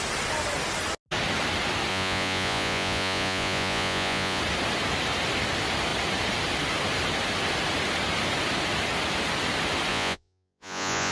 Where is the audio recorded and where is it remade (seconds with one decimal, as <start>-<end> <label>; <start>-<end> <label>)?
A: 0.0-1.9 recorded; 1.9-4.4 remade; 4.4-9.9 recorded; 9.9-11.1 remade